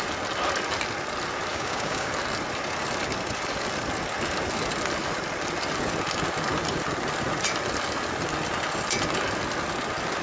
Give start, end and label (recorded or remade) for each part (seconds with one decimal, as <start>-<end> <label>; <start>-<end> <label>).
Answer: 0.0-1.5 recorded; 1.5-2.1 remade; 2.1-10.2 recorded